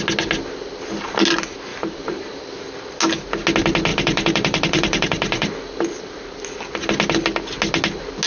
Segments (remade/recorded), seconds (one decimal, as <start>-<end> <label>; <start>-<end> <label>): 0.0-1.7 recorded; 1.7-2.4 remade; 2.4-3.9 recorded; 3.9-6.4 remade; 6.4-8.3 recorded